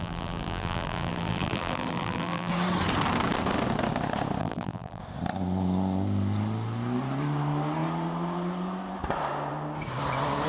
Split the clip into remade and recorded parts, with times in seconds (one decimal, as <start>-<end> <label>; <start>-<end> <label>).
0.0-2.5 remade; 2.5-4.4 recorded; 4.4-5.0 remade; 5.0-10.5 recorded